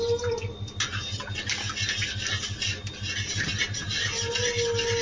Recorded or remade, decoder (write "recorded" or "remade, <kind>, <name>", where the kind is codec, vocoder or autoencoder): recorded